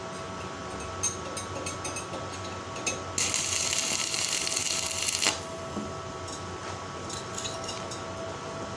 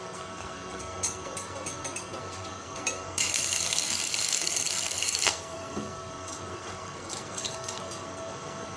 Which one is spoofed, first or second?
second